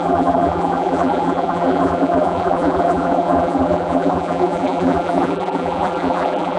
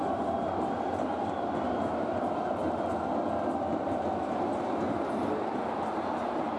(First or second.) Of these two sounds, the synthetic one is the first